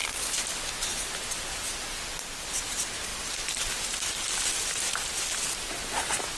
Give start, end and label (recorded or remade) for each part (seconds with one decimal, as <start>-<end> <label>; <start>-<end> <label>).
0.0-2.5 remade; 2.5-3.1 recorded; 3.1-5.2 remade; 5.2-6.4 recorded